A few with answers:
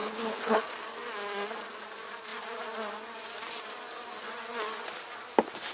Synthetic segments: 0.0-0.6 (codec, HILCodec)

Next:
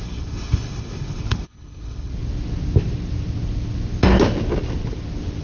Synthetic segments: 0.0-2.1 (codec, HILCodec)

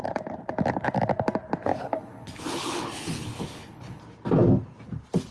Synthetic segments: 1.7-4.0 (codec, HILCodec)